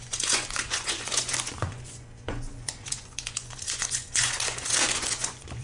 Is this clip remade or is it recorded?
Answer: remade